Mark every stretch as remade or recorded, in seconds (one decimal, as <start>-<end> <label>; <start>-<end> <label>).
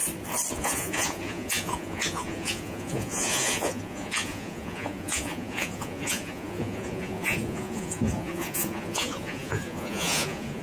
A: 0.0-0.5 recorded; 0.5-10.6 remade